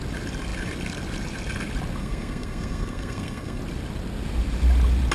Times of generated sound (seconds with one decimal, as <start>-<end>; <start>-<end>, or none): 2.0-3.6